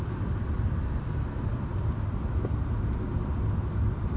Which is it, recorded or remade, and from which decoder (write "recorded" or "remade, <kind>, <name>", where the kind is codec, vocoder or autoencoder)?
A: remade, vocoder, BigVGAN v2